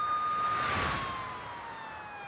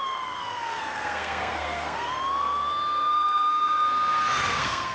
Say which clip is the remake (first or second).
second